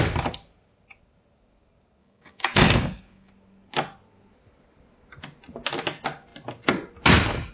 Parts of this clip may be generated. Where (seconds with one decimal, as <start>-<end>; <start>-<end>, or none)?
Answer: 2.0-3.3